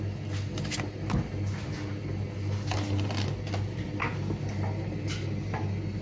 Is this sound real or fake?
real